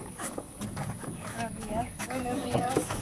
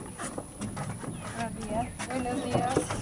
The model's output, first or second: first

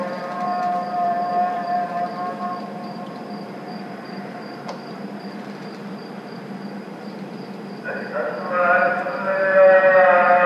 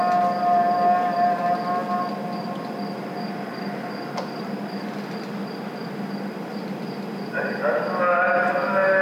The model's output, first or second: first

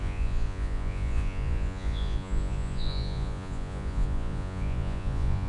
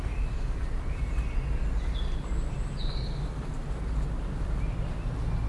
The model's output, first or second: first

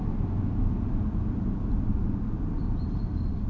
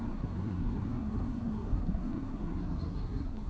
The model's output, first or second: second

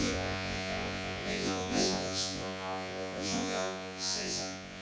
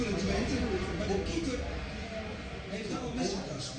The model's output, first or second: first